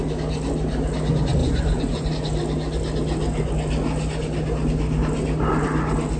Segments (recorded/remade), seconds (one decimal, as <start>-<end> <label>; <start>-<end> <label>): 0.0-1.4 recorded; 1.4-2.1 remade; 2.1-6.2 recorded